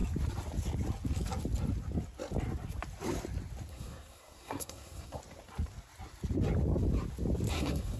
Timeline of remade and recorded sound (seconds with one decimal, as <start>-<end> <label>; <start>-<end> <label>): 0.0-3.7 recorded; 3.7-5.2 remade; 5.2-7.5 recorded; 7.5-8.0 remade